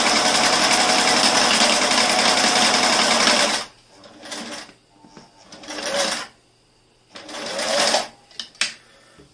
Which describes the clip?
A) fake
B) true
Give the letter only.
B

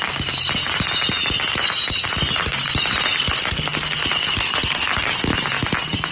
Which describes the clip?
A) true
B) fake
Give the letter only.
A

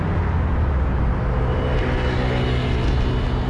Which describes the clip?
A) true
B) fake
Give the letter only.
A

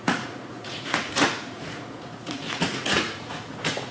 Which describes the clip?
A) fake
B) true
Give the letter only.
A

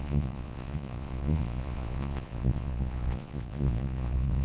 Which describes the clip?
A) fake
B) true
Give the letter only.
A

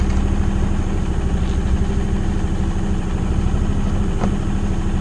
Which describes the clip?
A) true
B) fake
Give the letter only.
A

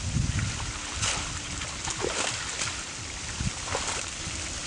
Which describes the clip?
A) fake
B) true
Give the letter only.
B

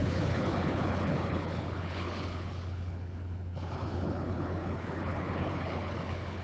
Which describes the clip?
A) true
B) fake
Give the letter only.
B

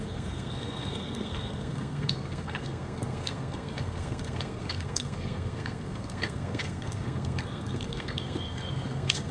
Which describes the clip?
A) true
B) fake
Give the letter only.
B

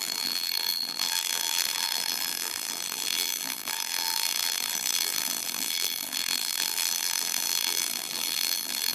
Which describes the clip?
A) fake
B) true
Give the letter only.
A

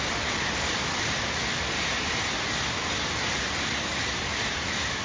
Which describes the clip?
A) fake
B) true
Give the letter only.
B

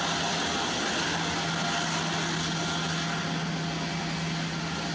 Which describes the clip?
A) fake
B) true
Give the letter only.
B